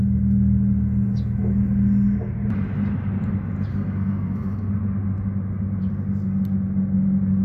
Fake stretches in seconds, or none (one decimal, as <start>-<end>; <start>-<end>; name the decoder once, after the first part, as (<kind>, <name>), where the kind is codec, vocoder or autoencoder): 3.7-4.7 (codec, SNAC)